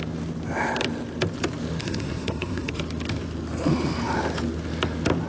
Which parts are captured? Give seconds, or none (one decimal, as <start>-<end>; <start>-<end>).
0.0-1.8; 2.7-5.3